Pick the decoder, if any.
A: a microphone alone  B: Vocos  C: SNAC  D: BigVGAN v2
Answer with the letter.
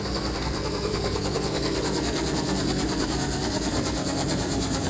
C